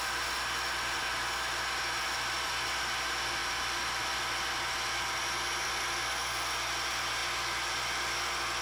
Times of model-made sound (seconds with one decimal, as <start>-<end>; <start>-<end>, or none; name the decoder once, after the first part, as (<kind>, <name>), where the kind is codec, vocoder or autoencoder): 3.4-4.1 (vocoder, BigVGAN v2)